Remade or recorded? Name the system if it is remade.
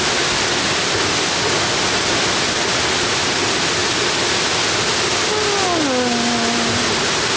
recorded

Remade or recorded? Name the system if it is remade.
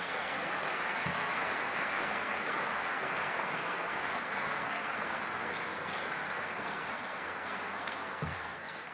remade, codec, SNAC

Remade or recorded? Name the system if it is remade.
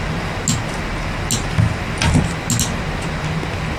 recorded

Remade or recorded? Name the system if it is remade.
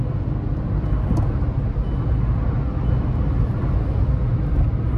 recorded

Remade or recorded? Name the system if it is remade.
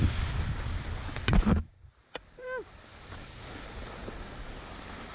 recorded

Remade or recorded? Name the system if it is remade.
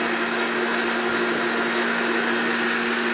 recorded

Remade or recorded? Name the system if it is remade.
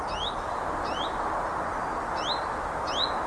recorded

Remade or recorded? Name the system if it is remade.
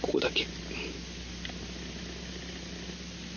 recorded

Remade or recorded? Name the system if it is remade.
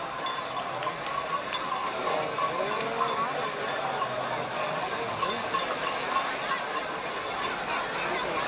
recorded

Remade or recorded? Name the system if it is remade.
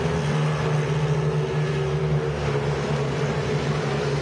recorded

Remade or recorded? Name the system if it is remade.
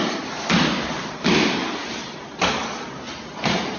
recorded